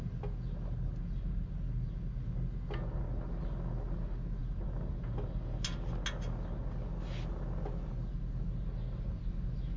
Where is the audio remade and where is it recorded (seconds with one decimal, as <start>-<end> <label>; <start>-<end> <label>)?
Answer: 0.0-9.8 recorded